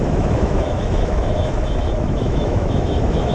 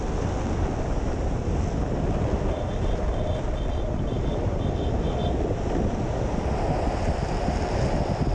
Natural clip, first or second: second